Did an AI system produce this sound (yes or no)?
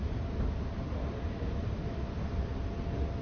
no